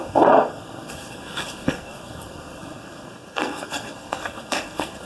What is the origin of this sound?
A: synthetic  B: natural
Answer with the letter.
A